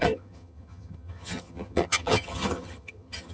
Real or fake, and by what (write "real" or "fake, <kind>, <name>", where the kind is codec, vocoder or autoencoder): fake, vocoder, HiFi-GAN